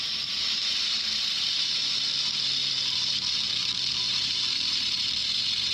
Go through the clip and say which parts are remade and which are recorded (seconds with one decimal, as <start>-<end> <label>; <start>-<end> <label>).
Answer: 0.0-2.6 remade; 2.6-3.5 recorded; 3.5-5.2 remade; 5.2-5.7 recorded